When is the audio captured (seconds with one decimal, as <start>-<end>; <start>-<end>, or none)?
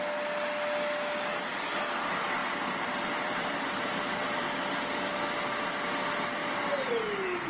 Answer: 0.0-2.4; 4.5-6.4; 6.9-7.5